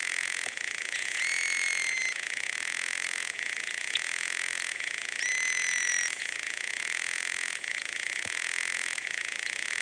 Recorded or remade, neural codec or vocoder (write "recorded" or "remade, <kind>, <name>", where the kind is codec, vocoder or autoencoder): remade, vocoder, Vocos